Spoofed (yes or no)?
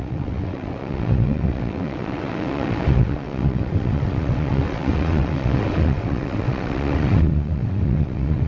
yes